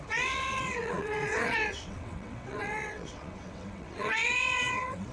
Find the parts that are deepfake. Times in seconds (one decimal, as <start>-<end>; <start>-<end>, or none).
0.0-5.1

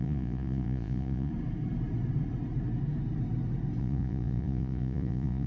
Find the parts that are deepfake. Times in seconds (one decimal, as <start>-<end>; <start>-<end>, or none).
0.0-1.3; 3.8-5.5

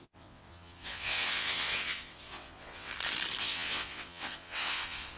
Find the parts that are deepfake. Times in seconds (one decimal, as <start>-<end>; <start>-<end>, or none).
0.0-2.9; 3.4-5.2